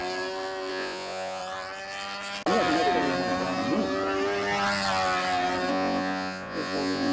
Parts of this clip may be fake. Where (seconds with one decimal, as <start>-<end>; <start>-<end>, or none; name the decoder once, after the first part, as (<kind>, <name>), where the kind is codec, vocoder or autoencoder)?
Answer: 0.7-1.4 (vocoder, Vocos); 5.7-7.1